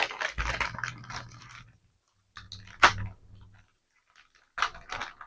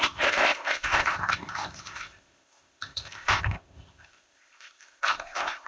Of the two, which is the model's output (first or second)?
second